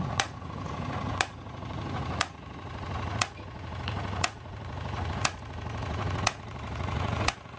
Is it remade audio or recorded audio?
remade